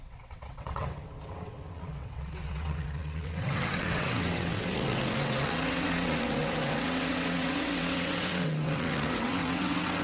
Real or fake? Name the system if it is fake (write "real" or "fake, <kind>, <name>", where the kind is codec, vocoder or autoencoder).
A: fake, vocoder, WaveNeXt